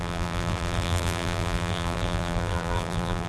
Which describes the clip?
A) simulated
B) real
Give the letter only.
A